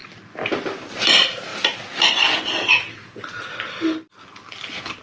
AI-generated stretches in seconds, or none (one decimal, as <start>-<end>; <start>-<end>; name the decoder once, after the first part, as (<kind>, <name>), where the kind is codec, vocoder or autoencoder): none